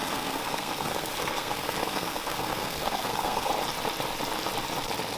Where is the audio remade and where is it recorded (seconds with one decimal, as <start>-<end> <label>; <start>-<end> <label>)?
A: 0.0-3.5 remade; 3.5-5.2 recorded